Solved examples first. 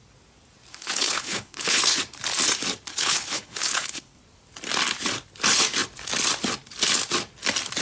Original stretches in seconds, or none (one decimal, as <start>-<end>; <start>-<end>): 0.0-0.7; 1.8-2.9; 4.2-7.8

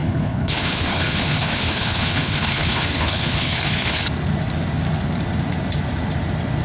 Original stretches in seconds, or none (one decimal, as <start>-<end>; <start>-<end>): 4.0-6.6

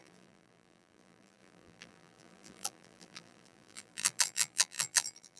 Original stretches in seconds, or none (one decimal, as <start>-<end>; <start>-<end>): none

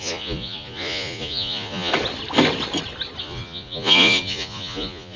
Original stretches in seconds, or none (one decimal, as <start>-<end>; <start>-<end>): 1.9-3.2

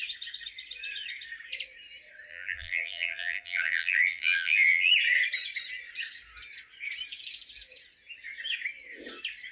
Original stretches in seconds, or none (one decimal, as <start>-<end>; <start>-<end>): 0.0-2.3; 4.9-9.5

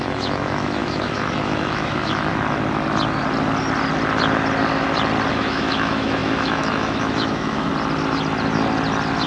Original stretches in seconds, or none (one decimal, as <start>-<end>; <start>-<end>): 2.3-5.3; 7.7-9.3

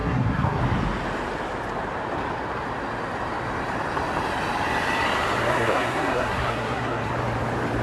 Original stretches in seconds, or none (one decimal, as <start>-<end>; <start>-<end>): 0.6-5.5; 7.1-7.8